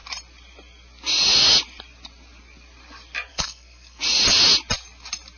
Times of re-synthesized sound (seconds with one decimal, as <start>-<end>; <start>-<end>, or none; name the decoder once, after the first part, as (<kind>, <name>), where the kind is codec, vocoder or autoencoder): 3.3-4.0 (codec, SNAC)